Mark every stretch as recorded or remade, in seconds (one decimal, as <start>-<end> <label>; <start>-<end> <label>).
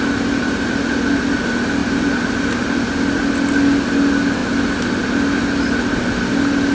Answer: 0.0-6.7 recorded